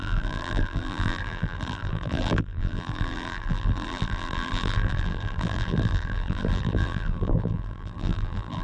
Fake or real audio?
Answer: fake